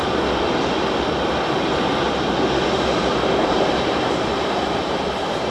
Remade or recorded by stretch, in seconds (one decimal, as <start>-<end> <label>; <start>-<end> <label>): 0.0-3.3 recorded; 3.3-5.5 remade